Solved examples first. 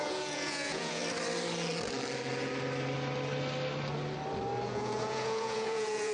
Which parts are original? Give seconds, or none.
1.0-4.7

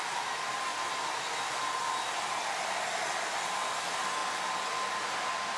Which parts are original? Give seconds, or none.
0.0-5.6

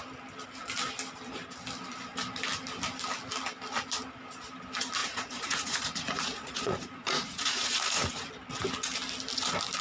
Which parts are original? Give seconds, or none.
0.0-5.0; 8.3-9.8

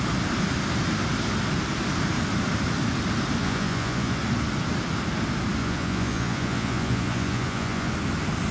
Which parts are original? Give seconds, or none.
0.0-3.4; 4.2-5.6; 7.9-8.5

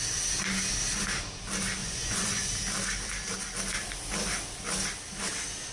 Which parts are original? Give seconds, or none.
0.0-1.8; 2.5-5.7